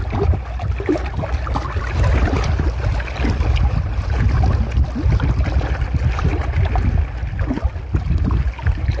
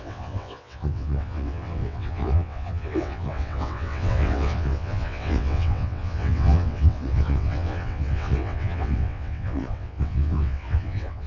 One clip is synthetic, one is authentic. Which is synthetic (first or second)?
second